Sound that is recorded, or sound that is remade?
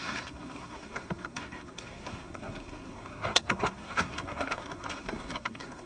remade